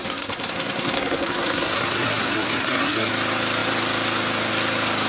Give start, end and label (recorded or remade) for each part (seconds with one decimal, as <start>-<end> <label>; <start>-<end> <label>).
0.0-3.1 remade; 3.1-5.1 recorded